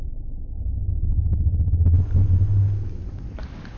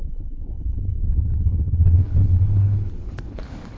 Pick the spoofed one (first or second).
second